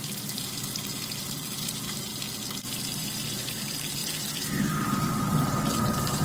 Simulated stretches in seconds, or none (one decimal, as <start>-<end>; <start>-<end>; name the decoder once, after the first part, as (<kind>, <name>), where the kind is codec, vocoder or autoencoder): 0.0-2.1 (vocoder, BigVGAN v2); 2.6-6.2